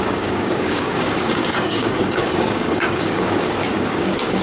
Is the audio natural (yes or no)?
no